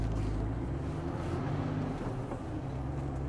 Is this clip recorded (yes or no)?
yes